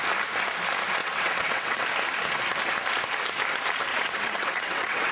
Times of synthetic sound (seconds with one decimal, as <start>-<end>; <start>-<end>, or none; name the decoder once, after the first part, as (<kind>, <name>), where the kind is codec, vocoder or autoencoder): 1.0-1.8 (vocoder, WaveNeXt); 3.9-5.1